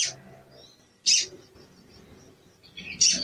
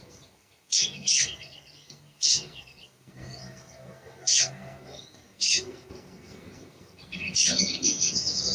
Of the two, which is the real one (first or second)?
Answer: first